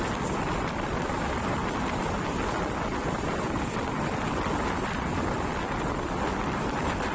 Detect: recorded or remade recorded